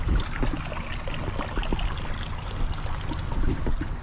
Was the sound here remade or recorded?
recorded